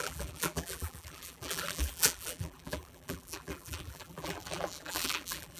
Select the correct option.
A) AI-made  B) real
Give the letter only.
A